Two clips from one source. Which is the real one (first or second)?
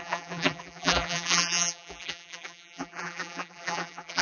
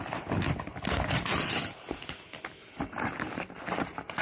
second